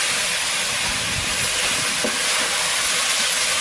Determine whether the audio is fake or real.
real